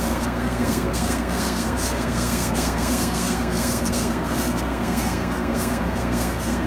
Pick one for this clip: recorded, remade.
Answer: remade